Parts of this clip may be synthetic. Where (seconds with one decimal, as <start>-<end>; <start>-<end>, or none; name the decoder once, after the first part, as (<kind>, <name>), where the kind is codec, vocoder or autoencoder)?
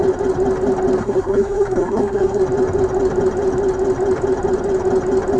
1.0-2.4 (codec, SNAC)